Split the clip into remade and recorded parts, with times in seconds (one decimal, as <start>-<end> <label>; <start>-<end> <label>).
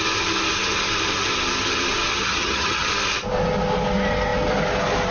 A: 0.0-2.1 recorded; 2.1-2.9 remade; 2.9-5.1 recorded